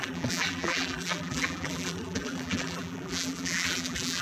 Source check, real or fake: fake